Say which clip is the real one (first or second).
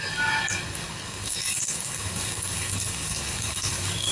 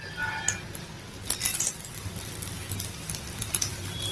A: second